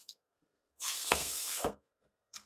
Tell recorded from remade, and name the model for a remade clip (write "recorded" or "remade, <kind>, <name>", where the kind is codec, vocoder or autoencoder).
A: remade, codec, SNAC